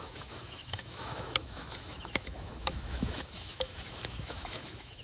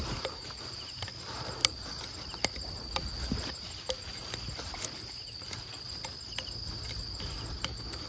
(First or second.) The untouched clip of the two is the second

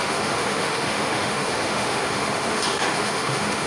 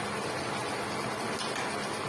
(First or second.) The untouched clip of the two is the second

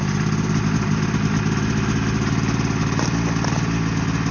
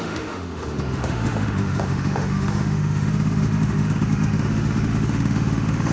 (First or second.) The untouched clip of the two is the first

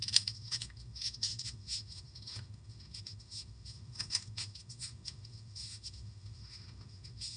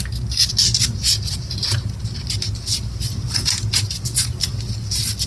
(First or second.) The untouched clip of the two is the second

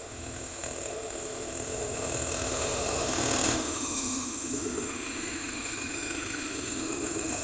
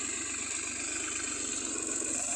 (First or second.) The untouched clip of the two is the second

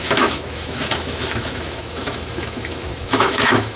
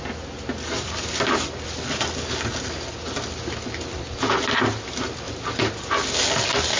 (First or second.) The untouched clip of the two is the second